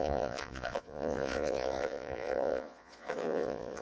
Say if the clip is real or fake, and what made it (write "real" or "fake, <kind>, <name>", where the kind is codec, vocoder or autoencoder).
fake, vocoder, Vocos